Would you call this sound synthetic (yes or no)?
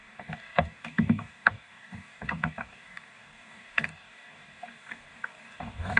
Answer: yes